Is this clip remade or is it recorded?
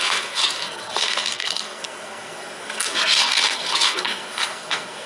remade